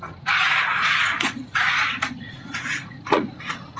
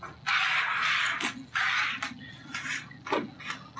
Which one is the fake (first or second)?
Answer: first